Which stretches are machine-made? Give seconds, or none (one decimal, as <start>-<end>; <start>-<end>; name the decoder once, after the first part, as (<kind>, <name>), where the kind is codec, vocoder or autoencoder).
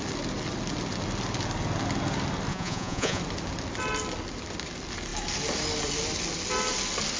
2.5-3.2 (vocoder, Vocos)